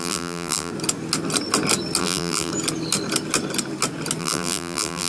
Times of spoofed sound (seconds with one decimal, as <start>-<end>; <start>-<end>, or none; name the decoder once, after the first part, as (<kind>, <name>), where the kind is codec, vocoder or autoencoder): 0.0-0.7 (vocoder, BigVGAN v2); 2.0-2.5; 4.2-5.1